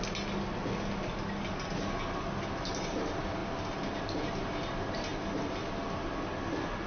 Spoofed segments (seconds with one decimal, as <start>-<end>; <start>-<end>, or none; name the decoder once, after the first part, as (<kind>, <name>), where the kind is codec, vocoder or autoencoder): none